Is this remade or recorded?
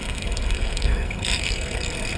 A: remade